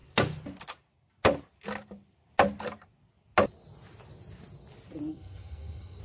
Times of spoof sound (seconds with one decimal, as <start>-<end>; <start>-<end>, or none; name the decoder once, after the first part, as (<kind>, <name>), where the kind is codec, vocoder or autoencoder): 5.1-6.0 (codec, SNAC)